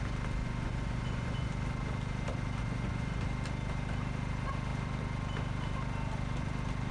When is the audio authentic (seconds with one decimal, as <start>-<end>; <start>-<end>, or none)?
0.0-0.4; 1.5-2.6; 3.2-6.9

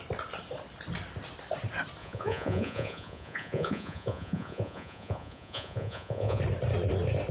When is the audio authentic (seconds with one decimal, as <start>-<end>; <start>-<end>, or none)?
0.0-2.0; 6.4-7.3